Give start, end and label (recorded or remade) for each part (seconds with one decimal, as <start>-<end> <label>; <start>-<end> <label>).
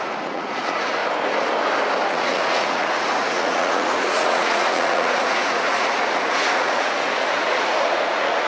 0.0-1.0 remade; 1.0-2.1 recorded; 2.1-8.5 remade